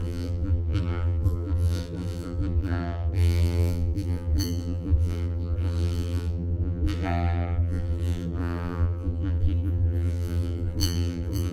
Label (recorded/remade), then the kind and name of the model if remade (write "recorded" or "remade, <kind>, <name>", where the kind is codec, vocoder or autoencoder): remade, vocoder, BigVGAN v2